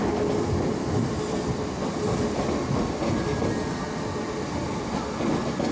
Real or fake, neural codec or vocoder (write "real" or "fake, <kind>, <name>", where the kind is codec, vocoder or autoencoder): real